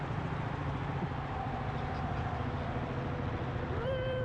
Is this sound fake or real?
fake